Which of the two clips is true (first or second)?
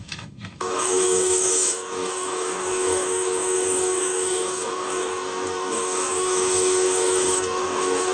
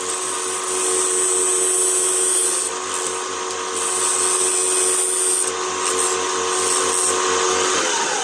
second